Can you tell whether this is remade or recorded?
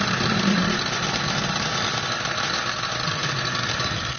recorded